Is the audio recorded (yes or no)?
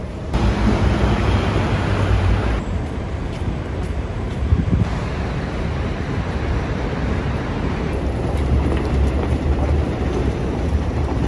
no